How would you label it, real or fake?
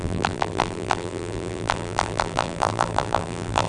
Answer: fake